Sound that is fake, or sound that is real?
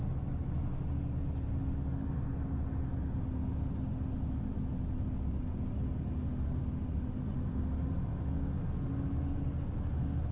real